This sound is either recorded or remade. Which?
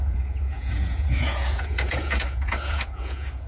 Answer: remade